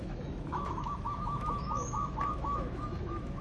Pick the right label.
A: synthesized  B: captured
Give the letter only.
A